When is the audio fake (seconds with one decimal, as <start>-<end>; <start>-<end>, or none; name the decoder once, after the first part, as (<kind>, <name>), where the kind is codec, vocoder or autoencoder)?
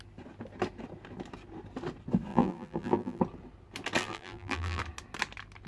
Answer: 2.3-3.2 (vocoder, BigVGAN v2); 4.0-4.8